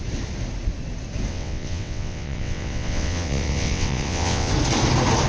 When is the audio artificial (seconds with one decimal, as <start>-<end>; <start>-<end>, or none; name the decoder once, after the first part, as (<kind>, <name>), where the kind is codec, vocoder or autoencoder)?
1.3-4.5 (vocoder, WaveNeXt)